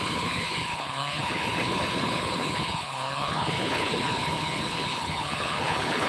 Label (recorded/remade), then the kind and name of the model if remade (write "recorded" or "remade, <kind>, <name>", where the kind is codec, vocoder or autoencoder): remade, codec, HILCodec